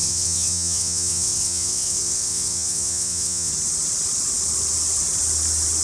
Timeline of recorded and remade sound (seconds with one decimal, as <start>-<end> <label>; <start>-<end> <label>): 0.0-3.5 remade; 3.5-5.8 recorded